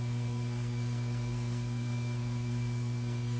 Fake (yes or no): yes